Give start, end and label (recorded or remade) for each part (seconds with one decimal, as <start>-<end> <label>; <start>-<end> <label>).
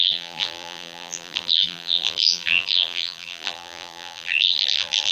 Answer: 0.0-5.1 remade